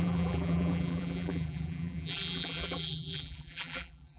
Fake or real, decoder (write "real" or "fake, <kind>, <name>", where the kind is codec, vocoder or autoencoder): fake, vocoder, BigVGAN v2